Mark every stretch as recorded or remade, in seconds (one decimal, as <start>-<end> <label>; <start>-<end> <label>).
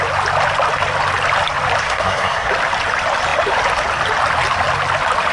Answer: 0.0-1.8 recorded; 1.8-2.5 remade; 2.5-5.3 recorded